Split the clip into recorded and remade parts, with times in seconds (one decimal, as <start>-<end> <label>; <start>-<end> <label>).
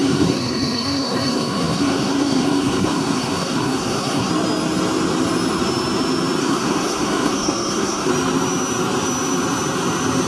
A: 0.0-4.3 remade; 4.3-6.4 recorded; 6.4-8.1 remade; 8.1-10.3 recorded